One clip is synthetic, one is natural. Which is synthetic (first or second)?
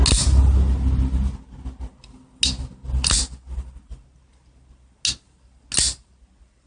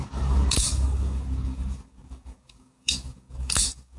second